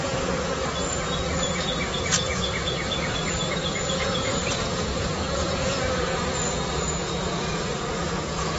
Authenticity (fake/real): fake